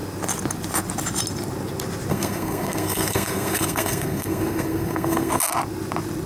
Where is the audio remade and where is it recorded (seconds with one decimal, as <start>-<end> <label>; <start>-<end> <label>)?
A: 0.0-2.1 recorded; 2.1-5.4 remade; 5.4-6.3 recorded